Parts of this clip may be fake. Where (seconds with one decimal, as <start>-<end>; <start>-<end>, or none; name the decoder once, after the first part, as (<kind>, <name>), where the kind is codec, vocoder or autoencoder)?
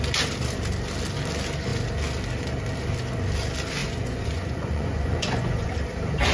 3.8-5.7 (vocoder, Vocos)